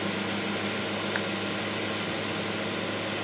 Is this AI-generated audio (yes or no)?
no